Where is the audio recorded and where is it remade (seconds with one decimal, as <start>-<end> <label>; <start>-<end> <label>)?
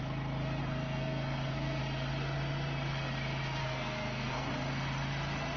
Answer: 0.0-0.6 recorded; 0.6-1.8 remade; 1.8-3.6 recorded; 3.6-4.5 remade; 4.5-5.6 recorded